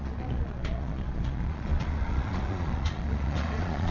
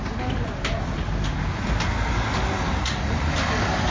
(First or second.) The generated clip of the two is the first